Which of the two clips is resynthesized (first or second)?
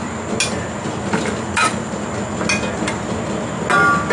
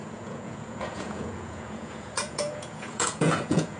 second